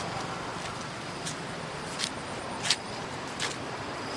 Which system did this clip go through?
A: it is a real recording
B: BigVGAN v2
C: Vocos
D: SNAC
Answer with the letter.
A